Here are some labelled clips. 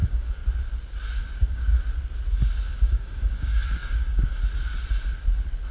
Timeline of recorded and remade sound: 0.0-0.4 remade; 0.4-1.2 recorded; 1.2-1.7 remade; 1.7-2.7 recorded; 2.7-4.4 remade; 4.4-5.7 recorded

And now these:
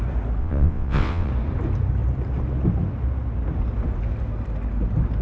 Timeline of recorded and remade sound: 0.0-0.4 recorded; 0.4-1.3 remade; 1.3-5.2 recorded

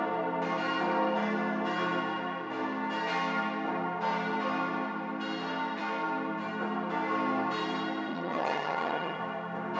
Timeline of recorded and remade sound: 0.0-8.1 recorded; 8.1-9.2 remade; 9.2-9.8 recorded

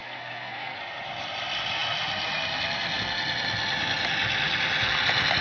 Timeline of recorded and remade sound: 0.0-0.8 remade; 0.8-5.4 recorded

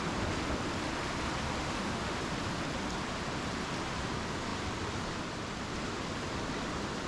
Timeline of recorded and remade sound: 0.0-1.6 recorded; 1.6-2.2 remade; 2.2-7.1 recorded

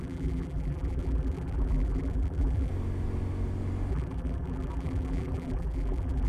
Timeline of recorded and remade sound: 0.0-2.7 remade; 2.7-3.9 recorded; 3.9-6.3 remade

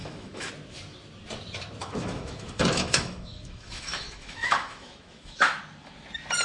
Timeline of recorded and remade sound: 0.0-0.5 remade; 0.5-1.8 recorded; 1.8-5.6 remade; 5.6-6.4 recorded

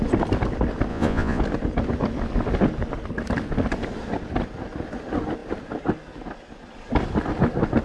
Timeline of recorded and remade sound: 0.0-0.9 recorded; 0.9-1.4 remade; 1.4-7.8 recorded